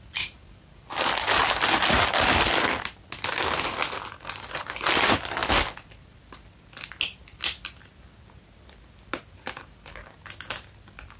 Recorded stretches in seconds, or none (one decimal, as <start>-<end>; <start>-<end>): 0.0-11.2